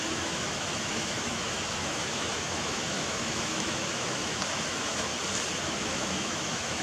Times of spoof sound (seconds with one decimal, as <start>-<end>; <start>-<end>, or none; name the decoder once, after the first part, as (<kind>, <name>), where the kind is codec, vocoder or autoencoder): 0.0-5.1 (autoencoder, DAC-VAE); 5.7-6.8